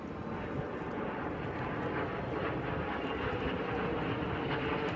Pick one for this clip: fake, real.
real